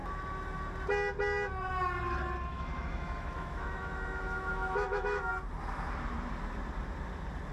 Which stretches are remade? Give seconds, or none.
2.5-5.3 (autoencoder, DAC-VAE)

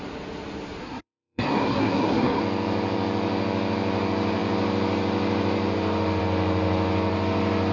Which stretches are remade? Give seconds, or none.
0.8-2.4 (codec, SNAC)

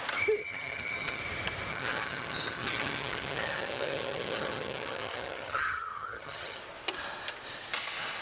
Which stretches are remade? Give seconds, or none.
0.4-1.2 (vocoder, HiFi-GAN); 1.7-6.6

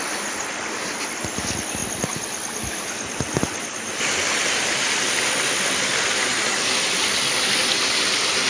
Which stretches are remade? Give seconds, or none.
none

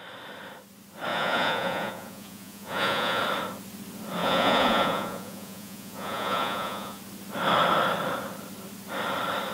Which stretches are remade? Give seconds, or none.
1.1-3.2 (vocoder, Vocos); 4.2-7.0

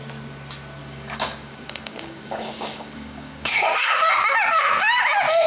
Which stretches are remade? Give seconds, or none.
0.8-4.1 (codec, DAC)

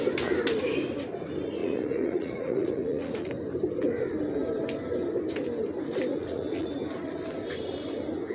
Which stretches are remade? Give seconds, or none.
1.6-3.3 (vocoder, Vocos); 6.1-6.7